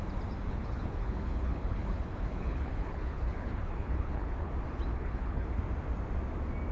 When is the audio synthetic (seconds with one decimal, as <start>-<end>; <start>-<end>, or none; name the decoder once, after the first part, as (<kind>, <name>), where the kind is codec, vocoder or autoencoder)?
0.5-4.5 (codec, HILCodec); 4.9-5.6